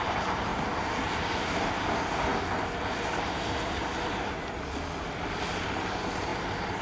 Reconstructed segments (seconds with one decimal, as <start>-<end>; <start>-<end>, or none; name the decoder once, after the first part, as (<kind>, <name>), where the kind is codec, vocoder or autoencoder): 0.0-0.5 (vocoder, BigVGAN v2); 1.4-2.3; 2.9-3.9; 5.5-6.3